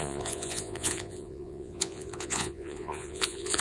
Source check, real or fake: fake